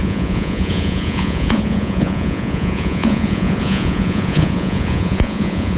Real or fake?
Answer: fake